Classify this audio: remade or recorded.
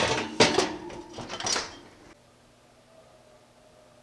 recorded